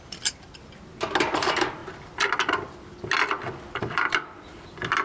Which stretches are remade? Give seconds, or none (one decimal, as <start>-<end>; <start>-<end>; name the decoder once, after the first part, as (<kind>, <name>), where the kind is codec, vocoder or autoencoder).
none